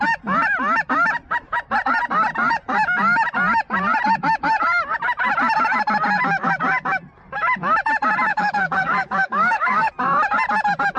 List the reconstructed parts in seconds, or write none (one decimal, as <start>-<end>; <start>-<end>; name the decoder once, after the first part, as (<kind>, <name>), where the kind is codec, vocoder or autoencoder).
8.3-9.9 (codec, DAC)